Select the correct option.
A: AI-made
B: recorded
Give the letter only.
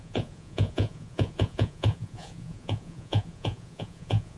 A